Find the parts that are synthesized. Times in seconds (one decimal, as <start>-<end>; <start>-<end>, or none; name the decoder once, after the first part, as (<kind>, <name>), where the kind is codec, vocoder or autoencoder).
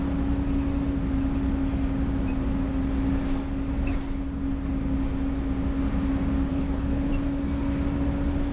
6.5-7.1 (codec, HILCodec)